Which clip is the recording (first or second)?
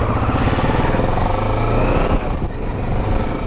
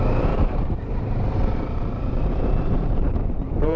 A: first